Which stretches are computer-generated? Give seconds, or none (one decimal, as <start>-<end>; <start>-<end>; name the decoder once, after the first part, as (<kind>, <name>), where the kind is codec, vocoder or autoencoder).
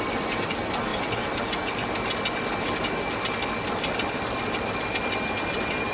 none